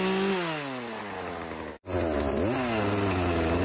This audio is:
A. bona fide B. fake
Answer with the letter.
A